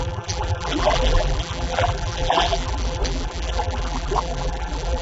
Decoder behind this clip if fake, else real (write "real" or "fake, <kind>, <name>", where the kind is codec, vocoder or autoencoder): fake, vocoder, BigVGAN v2